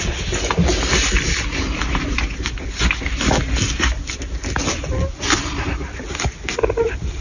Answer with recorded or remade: recorded